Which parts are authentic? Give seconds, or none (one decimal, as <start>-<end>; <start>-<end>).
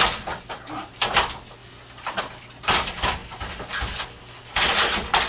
0.0-5.3